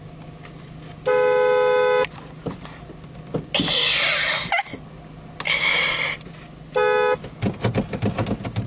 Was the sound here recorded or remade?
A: recorded